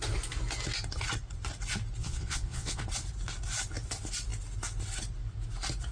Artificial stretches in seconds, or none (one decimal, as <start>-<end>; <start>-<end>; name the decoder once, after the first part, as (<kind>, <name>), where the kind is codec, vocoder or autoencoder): 2.0-2.8 (vocoder, Vocos)

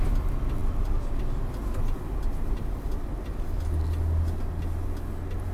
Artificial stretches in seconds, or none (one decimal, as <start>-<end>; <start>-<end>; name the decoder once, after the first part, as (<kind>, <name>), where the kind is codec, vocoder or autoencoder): none

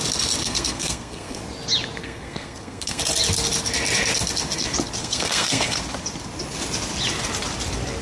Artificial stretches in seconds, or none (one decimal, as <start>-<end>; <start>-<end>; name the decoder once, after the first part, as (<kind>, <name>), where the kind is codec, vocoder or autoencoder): 0.4-1.4 (codec, SNAC); 2.0-3.0; 5.0-5.8

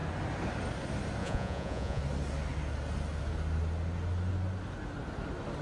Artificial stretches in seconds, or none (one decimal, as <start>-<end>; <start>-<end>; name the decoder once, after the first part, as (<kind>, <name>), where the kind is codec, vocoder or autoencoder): 1.2-2.0 (vocoder, Vocos)

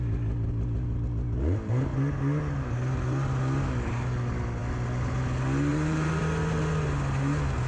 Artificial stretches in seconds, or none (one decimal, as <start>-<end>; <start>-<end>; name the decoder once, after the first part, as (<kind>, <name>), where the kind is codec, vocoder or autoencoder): 5.7-6.2 (vocoder, BigVGAN v2)

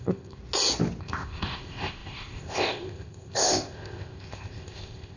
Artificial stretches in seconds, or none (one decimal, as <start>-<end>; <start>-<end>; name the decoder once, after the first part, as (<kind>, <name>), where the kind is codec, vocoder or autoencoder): 0.0-0.4 (codec, ZipCodec); 1.0-5.2

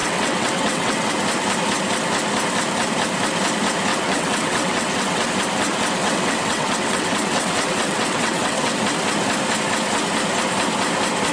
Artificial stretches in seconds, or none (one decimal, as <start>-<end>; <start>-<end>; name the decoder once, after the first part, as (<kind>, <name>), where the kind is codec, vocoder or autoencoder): 0.0-1.1 (vocoder, WaveNeXt); 3.9-5.3; 6.0-8.8

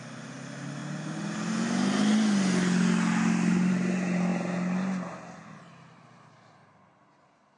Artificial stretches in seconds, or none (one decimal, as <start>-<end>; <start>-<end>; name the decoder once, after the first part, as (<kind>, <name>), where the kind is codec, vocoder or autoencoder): none